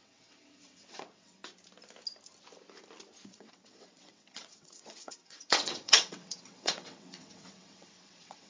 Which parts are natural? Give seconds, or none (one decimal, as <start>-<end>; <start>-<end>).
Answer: 1.4-3.3